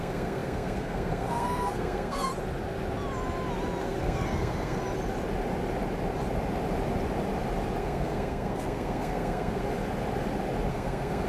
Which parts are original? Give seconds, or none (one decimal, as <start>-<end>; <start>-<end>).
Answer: 2.3-3.8; 4.8-7.8; 9.6-10.7

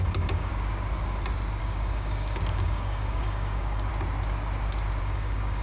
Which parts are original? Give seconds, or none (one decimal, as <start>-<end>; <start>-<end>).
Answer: 0.5-1.6; 3.9-5.0